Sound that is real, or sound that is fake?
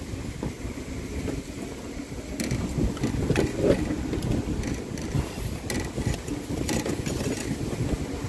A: real